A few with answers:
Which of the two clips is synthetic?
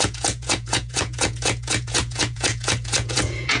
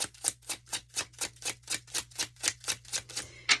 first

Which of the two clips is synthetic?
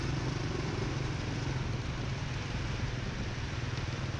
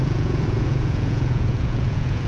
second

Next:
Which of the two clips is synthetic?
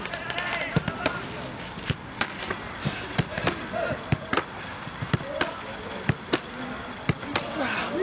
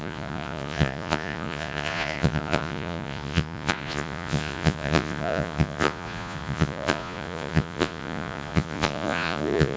second